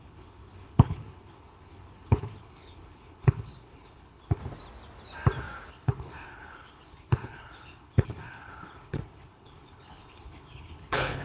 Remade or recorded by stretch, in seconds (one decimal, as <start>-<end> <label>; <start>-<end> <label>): 0.0-4.4 remade; 4.4-5.7 recorded; 5.7-11.2 remade